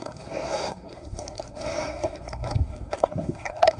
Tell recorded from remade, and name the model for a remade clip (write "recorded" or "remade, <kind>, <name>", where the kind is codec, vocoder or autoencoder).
remade, codec, SNAC